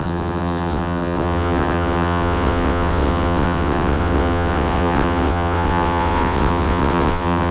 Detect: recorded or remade remade